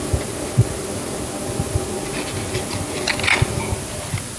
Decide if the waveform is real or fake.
real